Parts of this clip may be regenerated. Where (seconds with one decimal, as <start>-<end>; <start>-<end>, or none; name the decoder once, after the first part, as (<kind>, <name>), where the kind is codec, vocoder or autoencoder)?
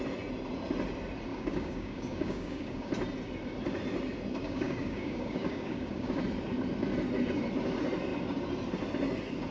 1.3-2.9 (codec, DAC); 4.4-6.2